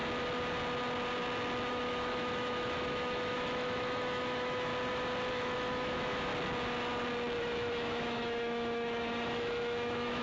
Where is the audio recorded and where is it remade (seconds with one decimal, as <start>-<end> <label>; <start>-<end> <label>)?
0.0-1.7 recorded; 1.7-4.7 remade; 4.7-5.3 recorded; 5.3-6.3 remade; 6.3-7.4 recorded; 7.4-10.2 remade